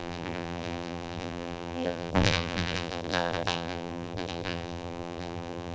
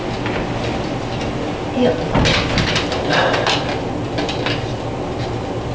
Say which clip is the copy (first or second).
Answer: first